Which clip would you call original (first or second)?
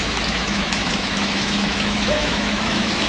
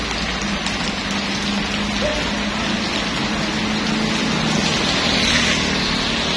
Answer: second